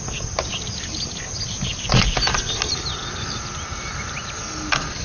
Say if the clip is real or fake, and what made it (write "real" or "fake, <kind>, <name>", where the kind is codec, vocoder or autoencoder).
real